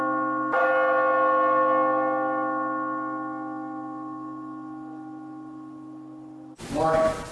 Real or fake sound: real